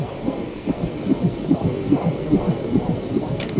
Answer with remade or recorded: remade